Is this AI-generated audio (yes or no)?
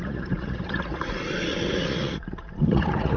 yes